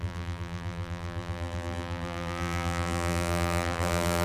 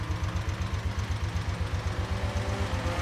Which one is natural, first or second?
second